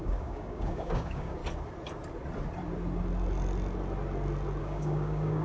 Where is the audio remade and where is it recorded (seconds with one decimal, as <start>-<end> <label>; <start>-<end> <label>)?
0.0-1.4 remade; 1.4-4.6 recorded; 4.6-5.4 remade